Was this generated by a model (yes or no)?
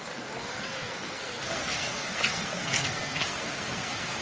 yes